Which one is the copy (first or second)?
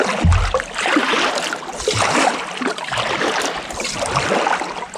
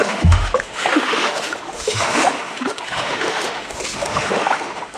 second